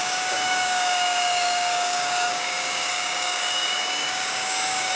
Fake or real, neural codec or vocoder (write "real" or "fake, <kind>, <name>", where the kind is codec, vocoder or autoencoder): fake, codec, DAC